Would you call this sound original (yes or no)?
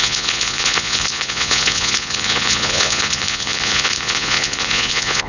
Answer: no